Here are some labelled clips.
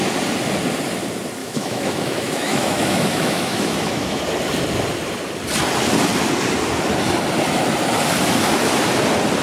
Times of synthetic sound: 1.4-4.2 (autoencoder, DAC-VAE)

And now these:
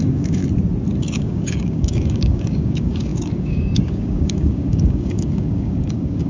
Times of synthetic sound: 0.0-0.4 (codec, DAC); 1.0-6.3

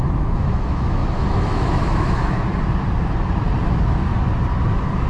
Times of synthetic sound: 0.0-2.4 (autoencoder, DAC-VAE); 3.6-4.1; 4.6-5.1

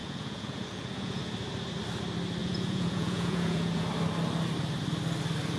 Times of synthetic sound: 0.0-1.2 (vocoder, Vocos); 2.4-3.8

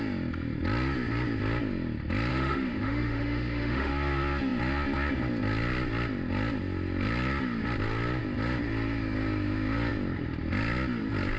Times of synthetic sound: 2.3-3.9 (autoencoder, DAC-VAE)